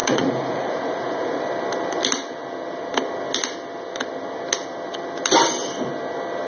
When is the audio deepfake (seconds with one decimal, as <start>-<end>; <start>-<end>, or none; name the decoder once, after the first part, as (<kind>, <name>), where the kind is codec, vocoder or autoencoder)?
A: 0.0-1.4 (vocoder, Vocos)